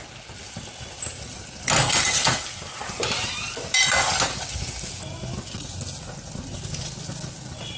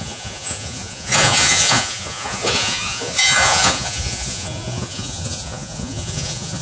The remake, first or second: second